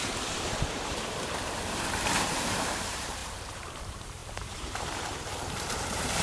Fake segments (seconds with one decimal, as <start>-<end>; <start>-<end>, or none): 0.0-6.2